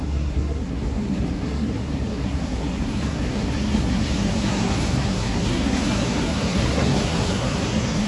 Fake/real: fake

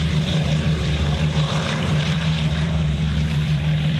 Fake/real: fake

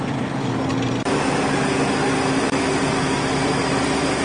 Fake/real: real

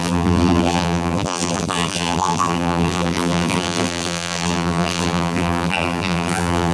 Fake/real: fake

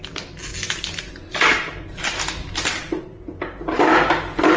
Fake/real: real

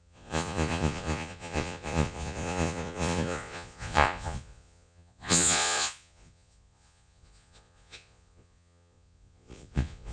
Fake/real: fake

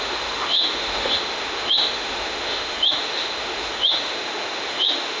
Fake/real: fake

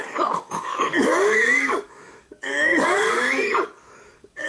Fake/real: fake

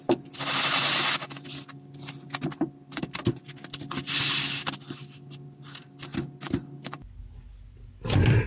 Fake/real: real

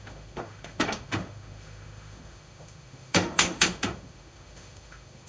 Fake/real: fake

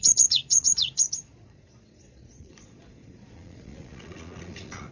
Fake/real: fake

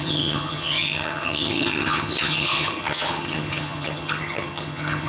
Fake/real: fake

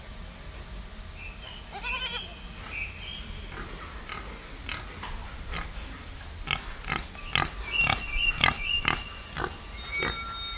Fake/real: real